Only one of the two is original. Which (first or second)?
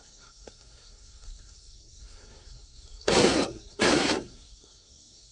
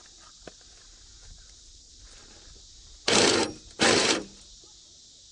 second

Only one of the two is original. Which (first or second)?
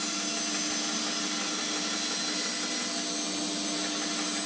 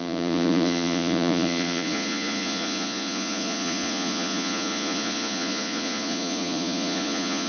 first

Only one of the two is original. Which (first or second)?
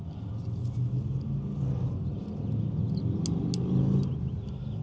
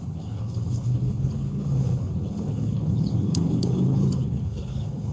first